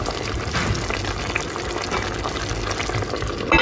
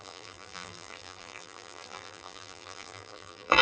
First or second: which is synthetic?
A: second